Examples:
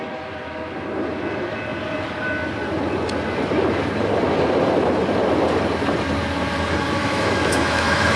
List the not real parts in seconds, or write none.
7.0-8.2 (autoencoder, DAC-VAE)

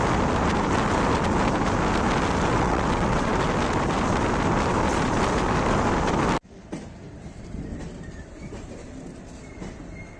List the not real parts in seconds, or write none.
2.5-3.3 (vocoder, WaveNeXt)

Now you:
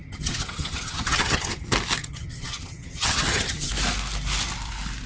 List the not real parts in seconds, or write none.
0.0-1.6 (vocoder, HiFi-GAN); 2.0-3.7